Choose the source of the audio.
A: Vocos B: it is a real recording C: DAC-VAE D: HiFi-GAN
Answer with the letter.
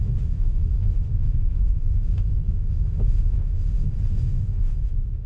C